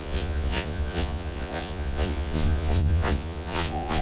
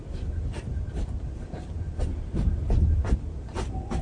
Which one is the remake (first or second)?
first